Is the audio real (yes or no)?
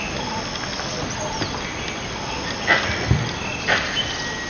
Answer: yes